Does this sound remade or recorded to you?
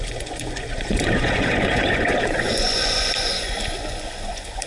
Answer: remade